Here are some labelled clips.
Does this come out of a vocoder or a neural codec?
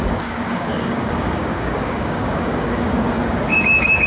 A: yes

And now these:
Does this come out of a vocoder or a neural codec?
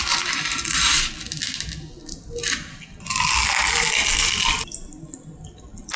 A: no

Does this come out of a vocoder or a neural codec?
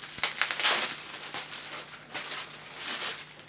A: no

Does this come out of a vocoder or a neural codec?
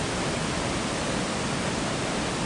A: no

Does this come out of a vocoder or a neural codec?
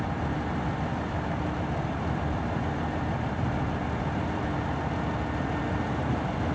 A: yes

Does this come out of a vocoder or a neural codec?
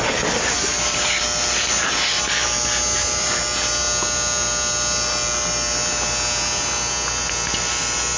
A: no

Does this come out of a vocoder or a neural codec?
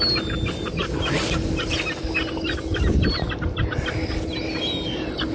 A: no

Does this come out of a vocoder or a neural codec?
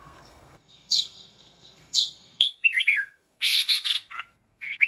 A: yes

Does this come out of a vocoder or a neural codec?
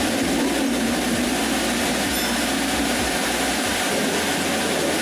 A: no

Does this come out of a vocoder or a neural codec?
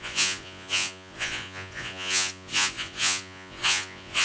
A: yes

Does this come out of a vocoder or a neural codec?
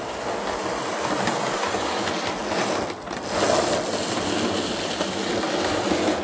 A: no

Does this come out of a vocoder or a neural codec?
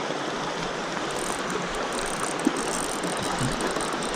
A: no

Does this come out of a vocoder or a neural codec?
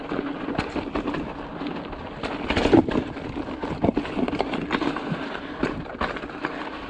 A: no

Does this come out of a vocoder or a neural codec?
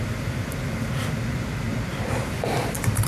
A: yes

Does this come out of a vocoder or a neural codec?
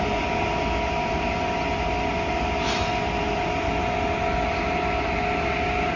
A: no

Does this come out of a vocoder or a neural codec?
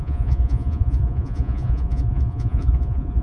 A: yes